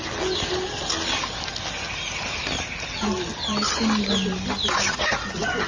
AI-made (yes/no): no